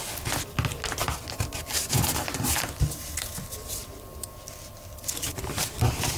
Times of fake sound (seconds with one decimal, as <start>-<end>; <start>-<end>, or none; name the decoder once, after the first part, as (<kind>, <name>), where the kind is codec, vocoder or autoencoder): none